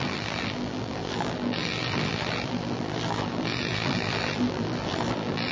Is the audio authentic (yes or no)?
no